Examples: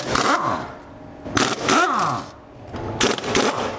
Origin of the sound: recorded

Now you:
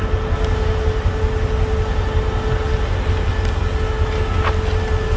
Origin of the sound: recorded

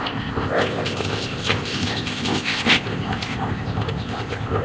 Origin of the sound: remade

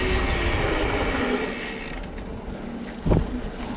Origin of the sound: recorded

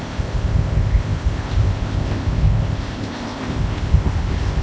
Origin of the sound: remade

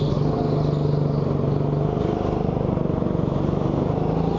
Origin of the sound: recorded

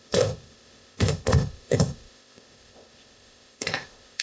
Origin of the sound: remade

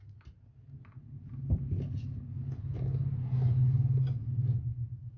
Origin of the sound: recorded